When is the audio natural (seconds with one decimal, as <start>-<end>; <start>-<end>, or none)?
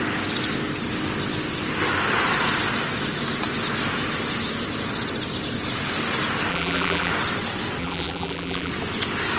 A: 0.0-6.5; 7.1-7.8; 8.7-9.4